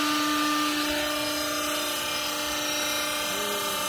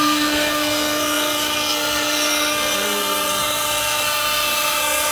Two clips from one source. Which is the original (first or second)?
first